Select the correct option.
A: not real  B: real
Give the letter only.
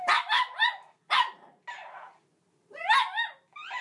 B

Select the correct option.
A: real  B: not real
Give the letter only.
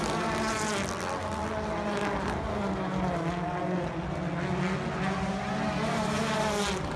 A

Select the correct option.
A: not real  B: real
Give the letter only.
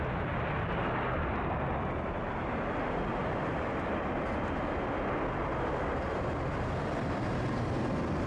B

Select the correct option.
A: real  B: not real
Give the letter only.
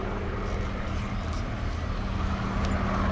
A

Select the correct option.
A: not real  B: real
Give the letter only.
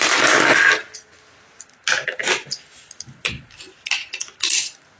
B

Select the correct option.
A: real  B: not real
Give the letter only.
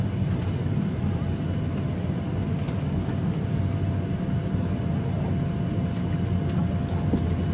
A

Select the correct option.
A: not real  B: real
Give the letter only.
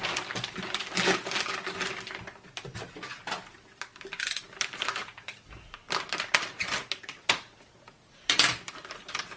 B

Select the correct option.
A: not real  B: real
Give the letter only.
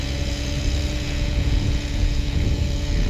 A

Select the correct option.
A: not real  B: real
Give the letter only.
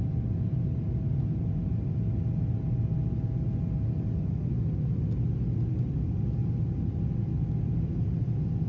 B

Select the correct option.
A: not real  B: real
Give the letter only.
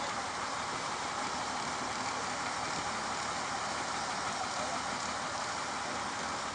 B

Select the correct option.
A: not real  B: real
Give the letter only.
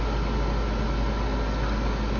B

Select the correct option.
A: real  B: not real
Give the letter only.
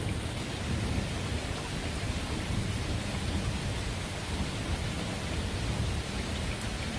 A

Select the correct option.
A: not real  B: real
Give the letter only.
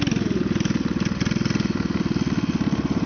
B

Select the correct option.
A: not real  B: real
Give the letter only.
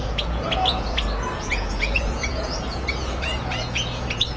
A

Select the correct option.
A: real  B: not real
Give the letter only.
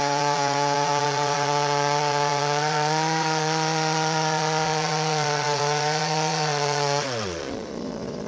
B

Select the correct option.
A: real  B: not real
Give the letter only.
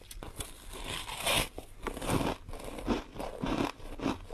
A